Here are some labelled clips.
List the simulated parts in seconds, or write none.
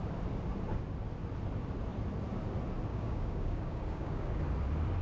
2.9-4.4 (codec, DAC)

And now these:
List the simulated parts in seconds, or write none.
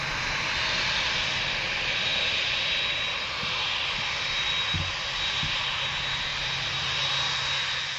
none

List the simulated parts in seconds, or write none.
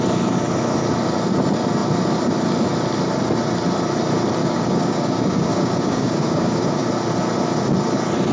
4.4-6.9 (codec, DAC)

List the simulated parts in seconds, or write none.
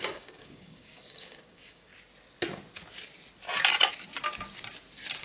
0.0-1.9 (codec, DAC)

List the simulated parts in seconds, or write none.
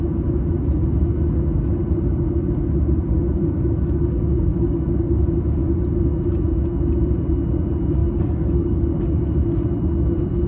4.5-5.3 (codec, DAC); 8.0-9.0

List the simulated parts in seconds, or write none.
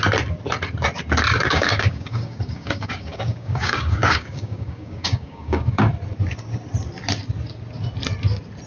1.3-5.8 (codec, DAC)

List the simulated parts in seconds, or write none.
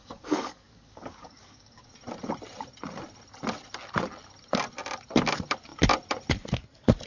0.0-1.9 (codec, DAC)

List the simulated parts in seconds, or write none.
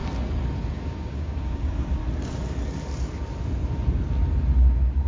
0.7-2.0 (codec, DAC)